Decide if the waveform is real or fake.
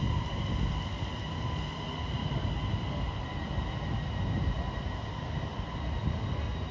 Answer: real